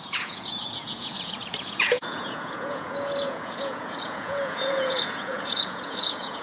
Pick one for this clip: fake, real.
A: fake